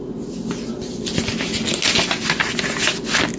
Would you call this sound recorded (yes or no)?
yes